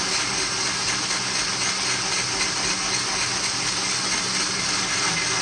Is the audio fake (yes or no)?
no